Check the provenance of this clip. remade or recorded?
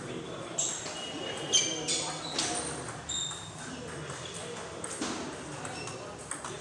recorded